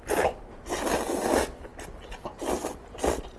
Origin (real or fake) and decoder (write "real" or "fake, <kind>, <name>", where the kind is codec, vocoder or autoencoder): real